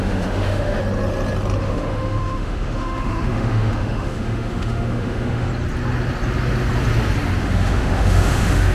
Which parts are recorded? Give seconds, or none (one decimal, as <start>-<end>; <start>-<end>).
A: 0.8-1.6; 5.5-7.4